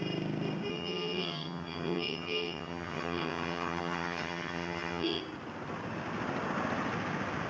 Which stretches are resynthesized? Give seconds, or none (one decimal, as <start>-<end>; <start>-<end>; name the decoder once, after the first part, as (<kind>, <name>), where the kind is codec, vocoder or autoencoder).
0.7-5.2 (vocoder, HiFi-GAN)